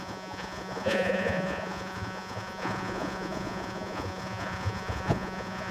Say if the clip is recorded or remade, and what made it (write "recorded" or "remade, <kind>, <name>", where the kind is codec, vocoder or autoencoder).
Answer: remade, vocoder, Vocos